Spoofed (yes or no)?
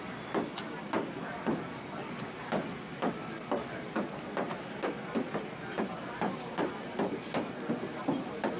no